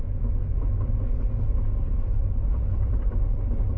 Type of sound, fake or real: real